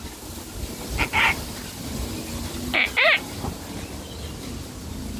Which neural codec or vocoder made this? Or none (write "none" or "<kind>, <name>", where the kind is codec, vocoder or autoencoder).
none